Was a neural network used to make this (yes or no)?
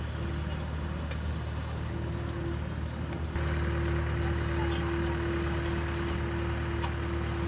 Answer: no